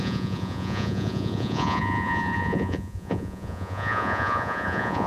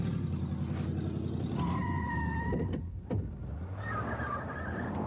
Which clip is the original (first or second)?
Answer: second